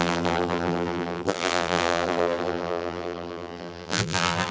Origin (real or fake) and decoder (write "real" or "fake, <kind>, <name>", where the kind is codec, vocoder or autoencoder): fake, vocoder, BigVGAN v2